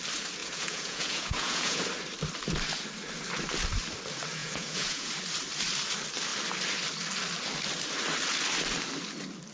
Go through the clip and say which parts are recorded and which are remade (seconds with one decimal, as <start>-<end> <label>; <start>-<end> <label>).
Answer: 0.0-0.4 recorded; 0.4-1.8 remade; 1.8-4.4 recorded; 4.4-5.1 remade; 5.1-9.5 recorded